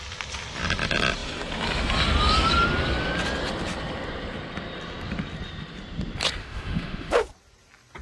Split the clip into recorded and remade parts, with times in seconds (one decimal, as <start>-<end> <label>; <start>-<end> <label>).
0.0-6.4 recorded; 6.4-7.1 remade; 7.1-8.0 recorded